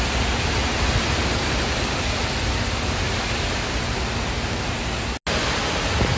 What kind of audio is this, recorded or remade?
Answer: recorded